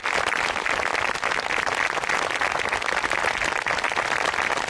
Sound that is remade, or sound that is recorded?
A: recorded